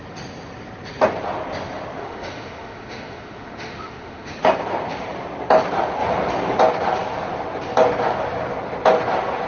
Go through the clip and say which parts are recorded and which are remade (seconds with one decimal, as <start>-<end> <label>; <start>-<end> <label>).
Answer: 0.0-2.0 recorded; 2.0-4.3 remade; 4.3-9.5 recorded